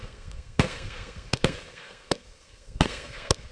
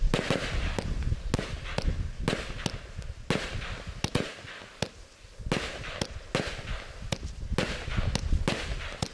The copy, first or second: first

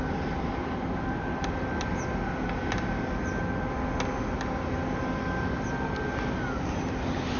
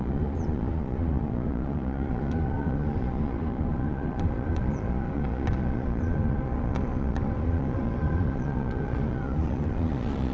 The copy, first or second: second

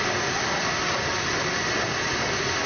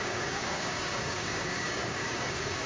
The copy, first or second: second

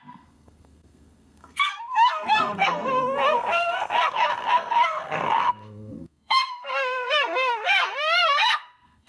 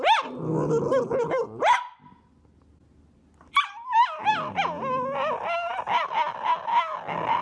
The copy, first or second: first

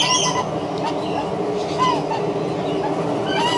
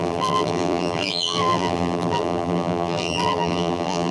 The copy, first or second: second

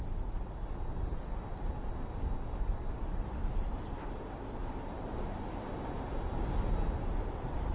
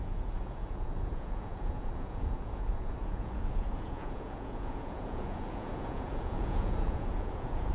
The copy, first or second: second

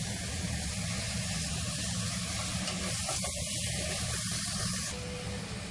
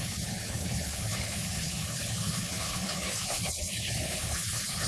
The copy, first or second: second